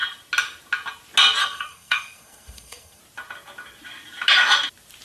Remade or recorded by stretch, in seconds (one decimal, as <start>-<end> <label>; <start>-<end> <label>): 0.0-1.4 recorded; 1.4-3.0 remade; 3.0-5.0 recorded